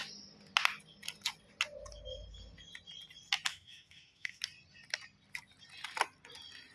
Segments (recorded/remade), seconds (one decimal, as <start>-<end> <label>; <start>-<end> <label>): 0.0-3.5 recorded; 3.5-4.4 remade; 4.4-6.7 recorded